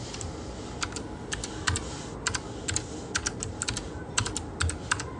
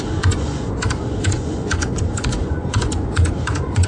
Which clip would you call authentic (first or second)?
first